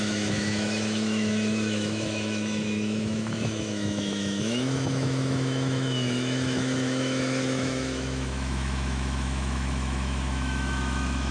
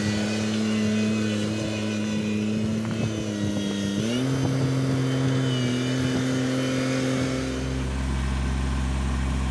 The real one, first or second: second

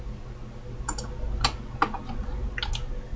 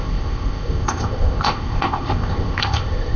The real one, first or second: first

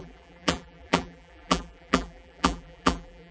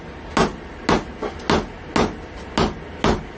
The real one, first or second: second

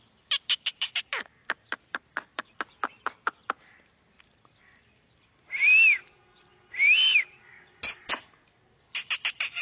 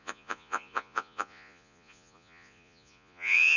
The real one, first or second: first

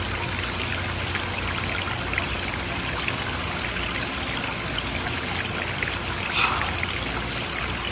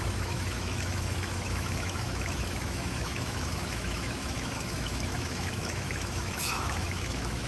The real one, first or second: first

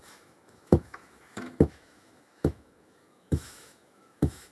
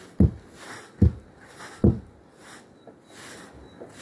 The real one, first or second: second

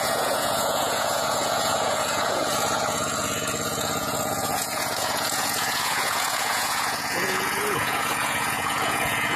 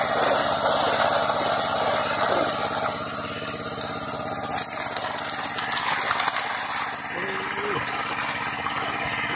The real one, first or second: second